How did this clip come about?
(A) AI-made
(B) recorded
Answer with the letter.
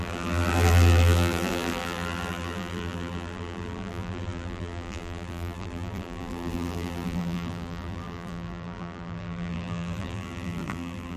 A